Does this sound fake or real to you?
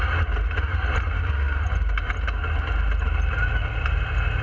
real